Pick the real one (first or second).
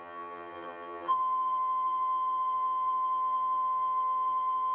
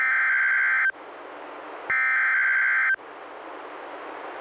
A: second